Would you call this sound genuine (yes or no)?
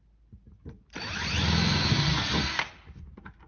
yes